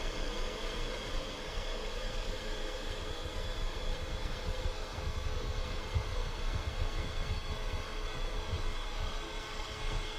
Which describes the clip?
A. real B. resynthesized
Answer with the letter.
B